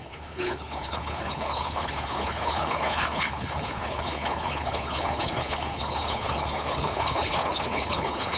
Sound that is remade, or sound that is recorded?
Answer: remade